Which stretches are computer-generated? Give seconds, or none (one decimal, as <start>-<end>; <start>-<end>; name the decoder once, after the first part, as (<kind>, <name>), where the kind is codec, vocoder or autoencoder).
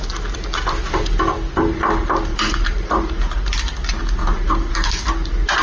0.5-1.0 (vocoder, BigVGAN v2); 2.3-3.5; 4.2-4.7